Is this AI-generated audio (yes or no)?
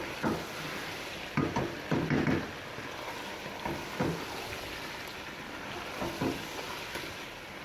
no